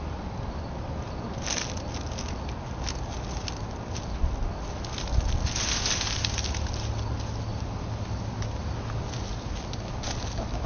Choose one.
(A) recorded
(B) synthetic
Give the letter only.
A